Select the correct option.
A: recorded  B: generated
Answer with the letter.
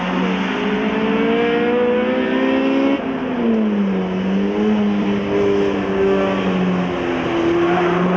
A